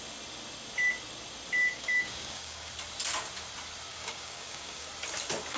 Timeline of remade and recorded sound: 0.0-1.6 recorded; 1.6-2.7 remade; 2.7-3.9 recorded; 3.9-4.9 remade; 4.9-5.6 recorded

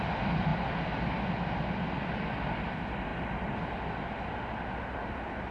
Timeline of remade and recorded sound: 0.0-5.5 recorded

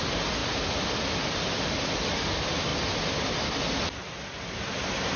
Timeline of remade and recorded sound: 0.0-5.2 recorded

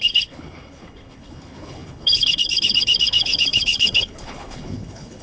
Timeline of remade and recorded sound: 0.0-5.2 remade